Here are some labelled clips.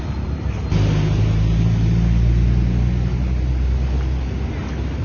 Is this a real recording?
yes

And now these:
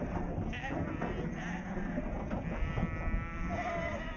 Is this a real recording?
yes